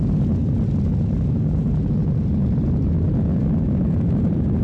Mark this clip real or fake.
real